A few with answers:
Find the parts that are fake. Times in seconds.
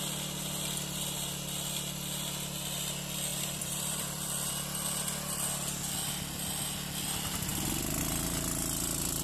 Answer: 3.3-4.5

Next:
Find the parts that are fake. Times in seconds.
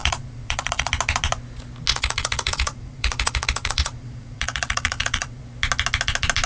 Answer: 0.0-0.9; 1.9-5.4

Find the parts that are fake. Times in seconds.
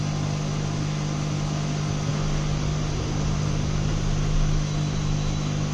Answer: none